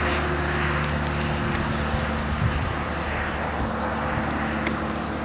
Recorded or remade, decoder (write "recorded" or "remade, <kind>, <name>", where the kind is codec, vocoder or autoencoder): recorded